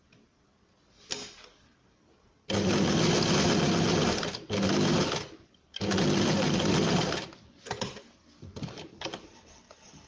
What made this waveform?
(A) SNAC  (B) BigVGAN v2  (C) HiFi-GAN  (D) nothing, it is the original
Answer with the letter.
D